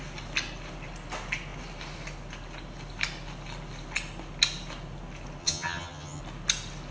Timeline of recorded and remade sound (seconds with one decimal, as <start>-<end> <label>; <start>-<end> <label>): 0.0-5.4 recorded; 5.4-6.2 remade; 6.2-6.9 recorded